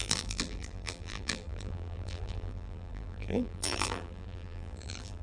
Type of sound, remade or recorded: remade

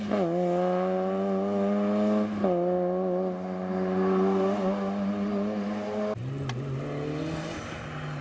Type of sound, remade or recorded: recorded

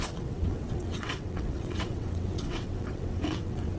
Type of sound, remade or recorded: remade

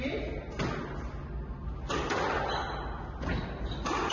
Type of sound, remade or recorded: recorded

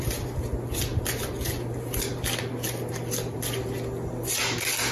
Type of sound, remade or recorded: recorded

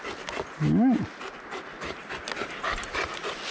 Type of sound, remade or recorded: recorded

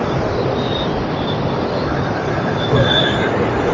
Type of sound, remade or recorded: recorded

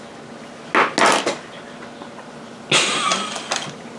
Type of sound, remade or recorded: recorded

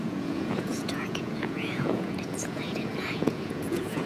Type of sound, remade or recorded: remade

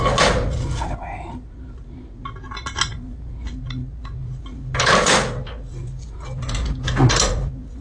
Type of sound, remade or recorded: recorded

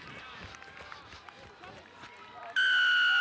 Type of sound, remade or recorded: recorded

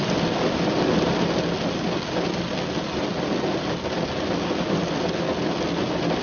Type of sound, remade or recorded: recorded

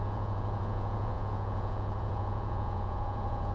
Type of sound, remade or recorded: remade